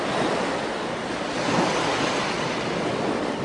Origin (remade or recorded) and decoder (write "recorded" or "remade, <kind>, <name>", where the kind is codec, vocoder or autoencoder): recorded